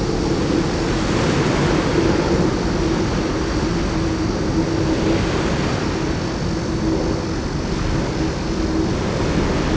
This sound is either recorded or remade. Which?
recorded